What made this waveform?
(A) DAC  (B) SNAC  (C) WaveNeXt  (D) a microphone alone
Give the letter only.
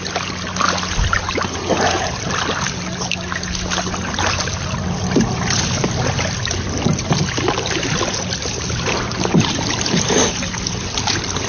D